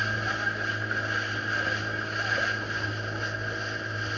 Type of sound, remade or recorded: recorded